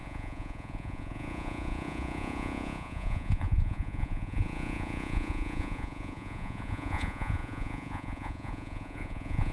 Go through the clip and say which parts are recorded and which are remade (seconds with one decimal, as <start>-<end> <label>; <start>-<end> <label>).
0.0-9.5 remade